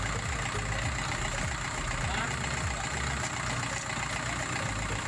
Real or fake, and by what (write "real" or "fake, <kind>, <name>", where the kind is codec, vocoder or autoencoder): real